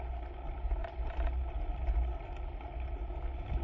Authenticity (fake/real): real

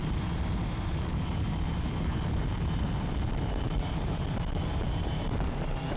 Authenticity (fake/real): fake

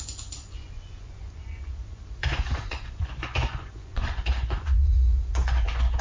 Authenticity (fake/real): fake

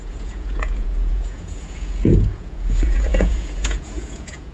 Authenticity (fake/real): fake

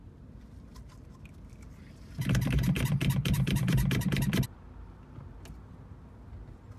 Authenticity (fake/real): real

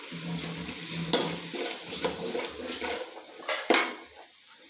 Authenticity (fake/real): real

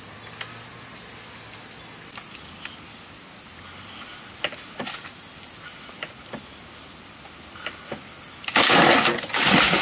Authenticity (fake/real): real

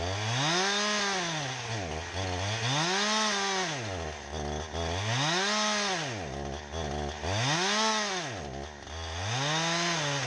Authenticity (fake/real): real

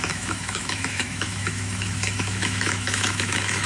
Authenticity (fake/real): fake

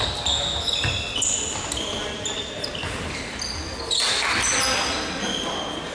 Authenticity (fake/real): real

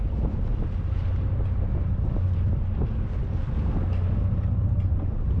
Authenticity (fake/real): real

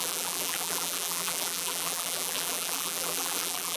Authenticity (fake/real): fake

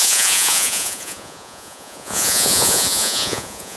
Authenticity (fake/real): fake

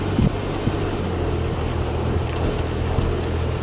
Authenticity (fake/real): real